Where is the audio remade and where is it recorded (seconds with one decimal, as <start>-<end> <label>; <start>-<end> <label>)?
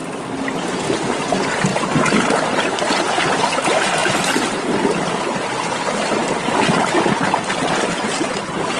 0.0-1.7 recorded; 1.7-2.9 remade; 2.9-8.8 recorded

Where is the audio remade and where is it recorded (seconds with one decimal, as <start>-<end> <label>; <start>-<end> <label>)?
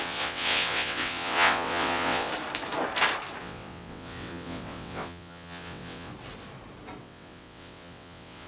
0.0-2.3 remade; 2.3-3.4 recorded; 3.4-6.1 remade; 6.1-7.0 recorded; 7.0-8.5 remade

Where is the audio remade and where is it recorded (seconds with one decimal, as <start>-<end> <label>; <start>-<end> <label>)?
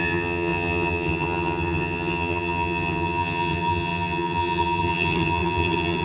0.0-6.0 remade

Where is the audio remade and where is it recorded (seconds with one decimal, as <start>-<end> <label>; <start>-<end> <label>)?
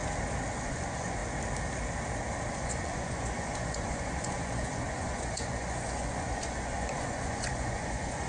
0.0-0.5 recorded; 0.5-1.2 remade; 1.2-2.5 recorded; 2.5-8.3 remade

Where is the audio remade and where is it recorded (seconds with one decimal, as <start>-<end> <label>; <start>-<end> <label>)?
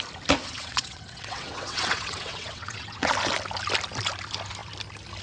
0.0-0.4 recorded; 0.4-3.1 remade; 3.1-5.2 recorded